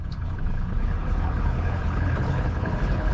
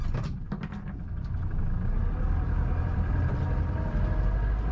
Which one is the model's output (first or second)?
first